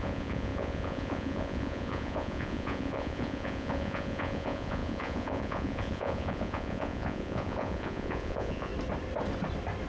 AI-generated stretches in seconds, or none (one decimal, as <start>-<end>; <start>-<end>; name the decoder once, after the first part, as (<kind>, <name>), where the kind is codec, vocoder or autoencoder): 0.0-8.7 (vocoder, Vocos)